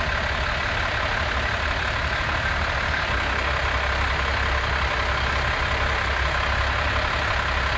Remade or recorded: recorded